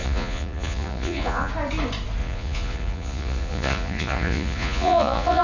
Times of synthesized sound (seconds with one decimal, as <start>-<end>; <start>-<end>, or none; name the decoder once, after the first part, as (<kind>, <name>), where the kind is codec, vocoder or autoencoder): 0.0-1.5 (vocoder, Vocos); 2.2-5.4